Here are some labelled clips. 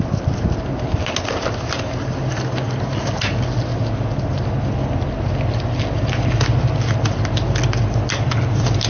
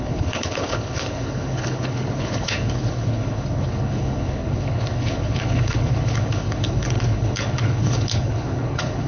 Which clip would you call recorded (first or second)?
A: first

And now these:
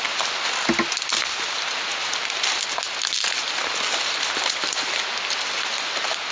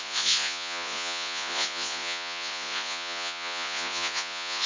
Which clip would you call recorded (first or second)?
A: first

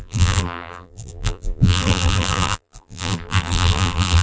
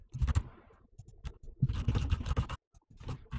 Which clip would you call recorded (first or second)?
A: second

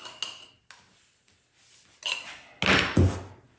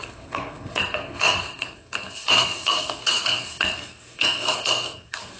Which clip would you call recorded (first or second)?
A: first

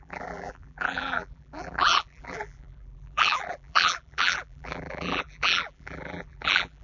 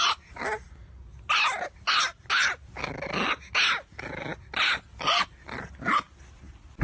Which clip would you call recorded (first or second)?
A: second